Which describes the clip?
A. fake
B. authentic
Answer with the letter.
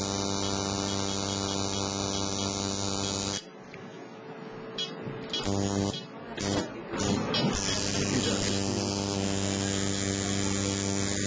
B